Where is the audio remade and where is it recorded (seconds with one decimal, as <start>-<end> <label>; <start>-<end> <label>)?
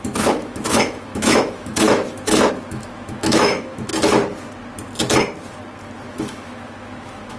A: 0.0-3.9 remade; 3.9-6.1 recorded; 6.1-7.4 remade